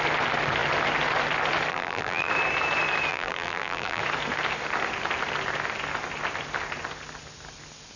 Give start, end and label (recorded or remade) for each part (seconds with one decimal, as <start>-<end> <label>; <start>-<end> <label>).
0.0-1.7 recorded; 1.7-2.3 remade; 2.3-3.1 recorded; 3.1-4.0 remade; 4.0-8.0 recorded